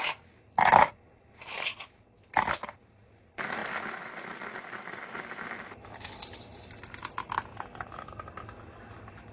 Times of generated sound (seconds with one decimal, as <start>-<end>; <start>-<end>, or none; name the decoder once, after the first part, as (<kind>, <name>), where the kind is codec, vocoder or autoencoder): none